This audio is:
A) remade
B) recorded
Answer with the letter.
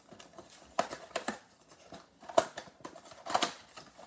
B